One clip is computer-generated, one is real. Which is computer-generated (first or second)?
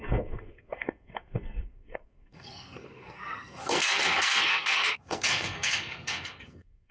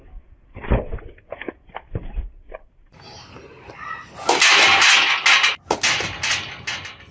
first